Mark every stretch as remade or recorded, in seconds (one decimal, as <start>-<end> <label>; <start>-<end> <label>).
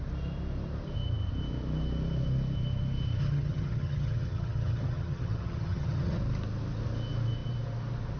0.0-3.2 recorded; 3.2-6.2 remade; 6.2-8.2 recorded